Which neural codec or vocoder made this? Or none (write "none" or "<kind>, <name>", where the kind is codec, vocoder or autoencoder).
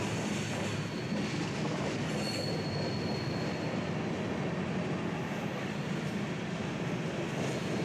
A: none